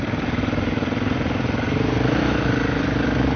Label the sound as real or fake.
real